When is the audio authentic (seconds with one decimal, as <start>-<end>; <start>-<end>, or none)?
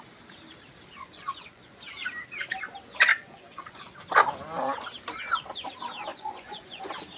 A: 0.0-1.0; 1.8-3.1; 3.8-6.1; 6.8-7.2